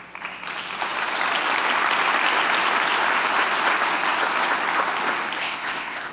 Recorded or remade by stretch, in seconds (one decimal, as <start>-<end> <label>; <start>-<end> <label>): 0.0-5.4 recorded; 5.4-6.1 remade